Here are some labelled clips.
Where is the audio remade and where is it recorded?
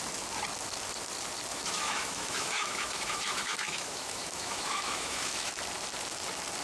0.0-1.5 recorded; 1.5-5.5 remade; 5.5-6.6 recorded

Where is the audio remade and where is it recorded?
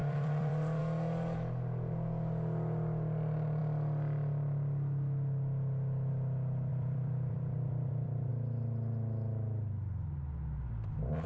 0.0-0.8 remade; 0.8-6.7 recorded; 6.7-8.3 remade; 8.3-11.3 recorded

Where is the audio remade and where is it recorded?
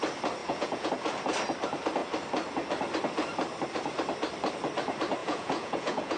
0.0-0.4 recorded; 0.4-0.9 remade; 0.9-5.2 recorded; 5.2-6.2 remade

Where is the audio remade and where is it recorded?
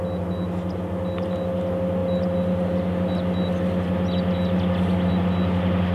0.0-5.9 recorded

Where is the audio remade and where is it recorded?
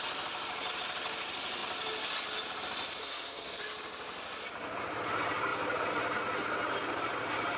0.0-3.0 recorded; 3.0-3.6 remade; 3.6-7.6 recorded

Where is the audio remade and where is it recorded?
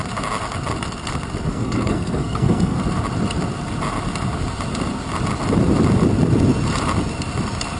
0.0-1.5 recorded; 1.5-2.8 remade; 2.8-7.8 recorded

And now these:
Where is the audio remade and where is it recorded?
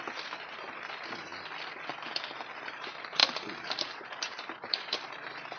0.0-1.3 remade; 1.3-2.6 recorded; 2.6-5.6 remade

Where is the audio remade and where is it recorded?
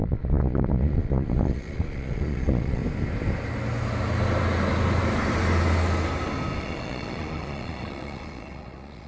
0.0-2.8 remade; 2.8-6.6 recorded; 6.6-9.1 remade